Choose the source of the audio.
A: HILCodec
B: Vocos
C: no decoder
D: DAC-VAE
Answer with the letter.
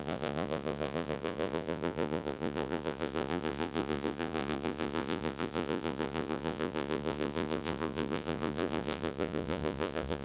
B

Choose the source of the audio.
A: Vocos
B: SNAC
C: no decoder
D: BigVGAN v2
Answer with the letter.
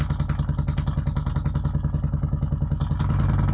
C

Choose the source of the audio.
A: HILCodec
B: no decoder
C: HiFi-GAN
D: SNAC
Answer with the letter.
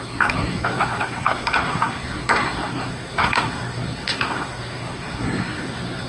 D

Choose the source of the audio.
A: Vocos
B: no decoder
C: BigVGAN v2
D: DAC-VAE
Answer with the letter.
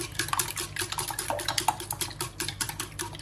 B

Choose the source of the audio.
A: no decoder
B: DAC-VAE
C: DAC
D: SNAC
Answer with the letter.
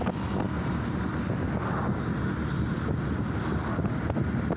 A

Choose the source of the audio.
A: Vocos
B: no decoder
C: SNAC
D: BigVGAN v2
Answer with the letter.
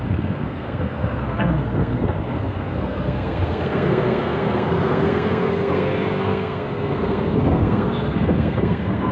C